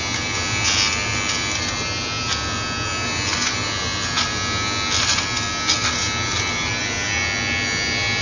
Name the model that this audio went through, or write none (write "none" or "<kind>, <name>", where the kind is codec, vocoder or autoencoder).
none